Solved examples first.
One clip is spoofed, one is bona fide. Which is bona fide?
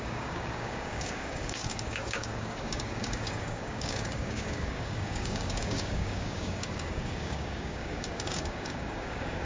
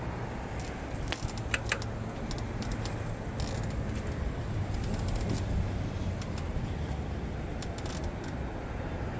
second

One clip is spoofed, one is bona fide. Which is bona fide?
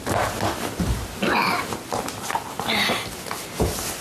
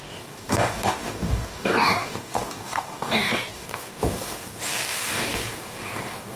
first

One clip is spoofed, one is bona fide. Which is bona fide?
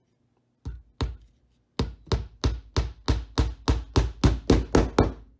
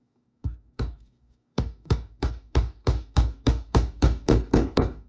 first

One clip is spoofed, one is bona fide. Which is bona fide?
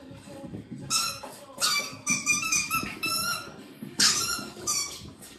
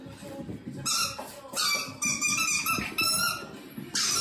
second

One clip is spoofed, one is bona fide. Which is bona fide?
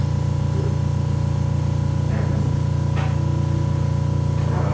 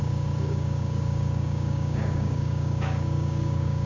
first